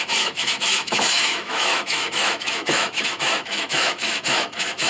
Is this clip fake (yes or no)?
yes